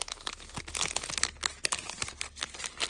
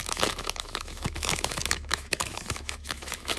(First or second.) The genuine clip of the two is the first